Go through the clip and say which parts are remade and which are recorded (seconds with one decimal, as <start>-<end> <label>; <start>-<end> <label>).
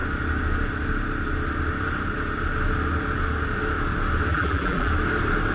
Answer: 0.0-4.3 recorded; 4.3-4.9 remade; 4.9-5.5 recorded